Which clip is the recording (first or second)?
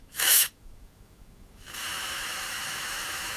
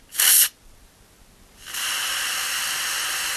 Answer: second